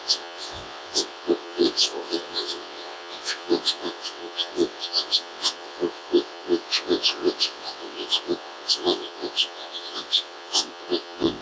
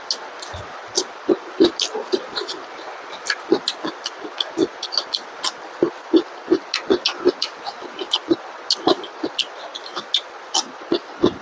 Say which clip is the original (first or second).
second